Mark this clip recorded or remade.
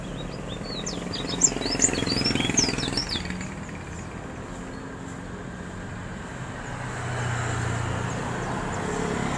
recorded